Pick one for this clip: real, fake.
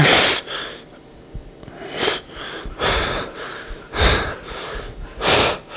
real